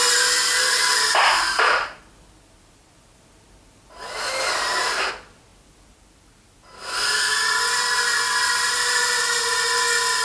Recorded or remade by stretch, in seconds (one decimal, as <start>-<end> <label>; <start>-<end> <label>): 0.0-10.2 recorded